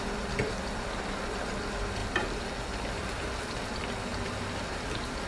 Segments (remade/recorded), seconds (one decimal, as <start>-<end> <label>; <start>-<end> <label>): 0.0-2.0 remade; 2.0-2.6 recorded; 2.6-5.3 remade